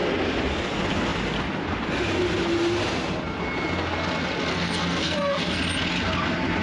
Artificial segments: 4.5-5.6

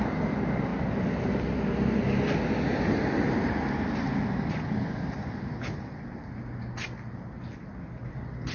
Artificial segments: none

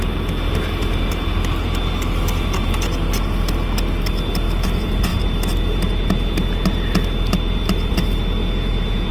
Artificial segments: none

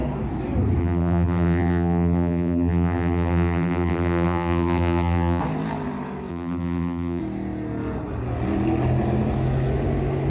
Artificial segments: 0.8-5.4; 6.3-7.2

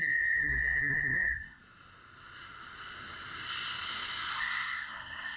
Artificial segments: 0.0-1.6; 4.4-5.4

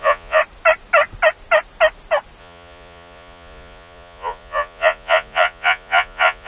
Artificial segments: 0.0-0.4; 2.4-6.5

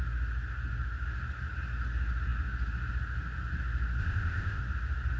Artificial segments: 4.0-4.6

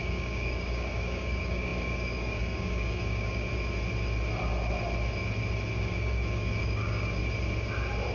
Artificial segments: 0.0-3.4; 5.8-7.2